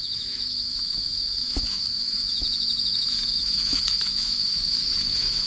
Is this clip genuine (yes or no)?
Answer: no